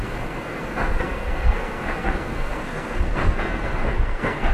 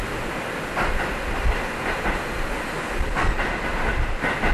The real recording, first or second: second